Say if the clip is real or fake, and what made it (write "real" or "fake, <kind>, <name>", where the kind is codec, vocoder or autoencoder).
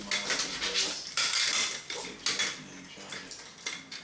real